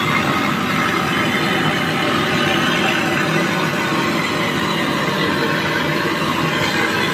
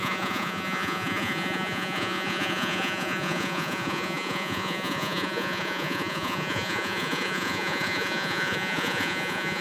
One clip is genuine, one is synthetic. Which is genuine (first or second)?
first